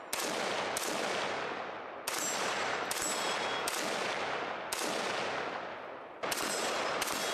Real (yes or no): yes